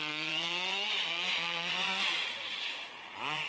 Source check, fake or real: fake